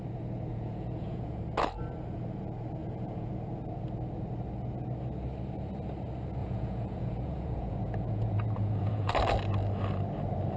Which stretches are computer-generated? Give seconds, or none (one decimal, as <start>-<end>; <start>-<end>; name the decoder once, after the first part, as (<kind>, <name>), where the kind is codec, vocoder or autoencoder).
0.5-1.4 (vocoder, Vocos); 2.8-3.3; 6.4-9.1